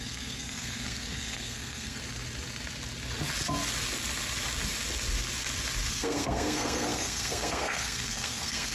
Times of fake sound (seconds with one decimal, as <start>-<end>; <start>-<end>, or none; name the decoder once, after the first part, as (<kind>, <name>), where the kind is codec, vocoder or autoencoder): 0.0-2.0 (codec, SNAC); 5.9-8.7